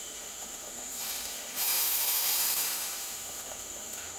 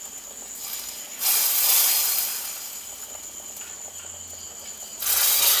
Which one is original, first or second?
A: second